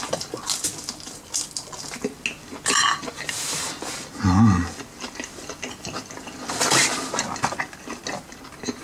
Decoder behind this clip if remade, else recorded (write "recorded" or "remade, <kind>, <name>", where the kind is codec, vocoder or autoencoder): recorded